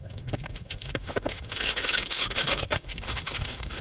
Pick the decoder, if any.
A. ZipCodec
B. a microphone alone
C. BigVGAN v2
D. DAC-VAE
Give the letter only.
D